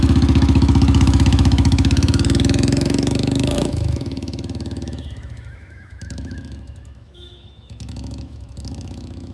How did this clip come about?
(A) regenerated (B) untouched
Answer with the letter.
A